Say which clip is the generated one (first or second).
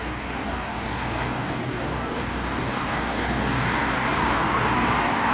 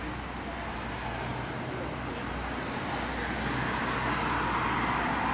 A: first